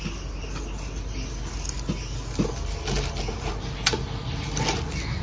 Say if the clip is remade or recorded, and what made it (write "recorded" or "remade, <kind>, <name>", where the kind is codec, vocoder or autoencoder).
recorded